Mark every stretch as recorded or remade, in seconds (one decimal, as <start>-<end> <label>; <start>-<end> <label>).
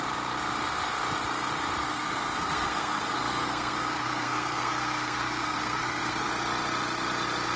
0.0-1.8 recorded; 1.8-6.3 remade; 6.3-7.6 recorded